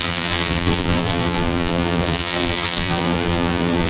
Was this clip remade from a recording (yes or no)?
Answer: yes